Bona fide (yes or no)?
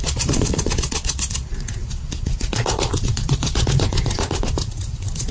no